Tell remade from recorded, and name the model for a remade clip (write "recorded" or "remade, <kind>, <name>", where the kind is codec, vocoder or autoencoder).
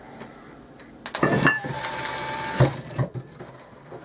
recorded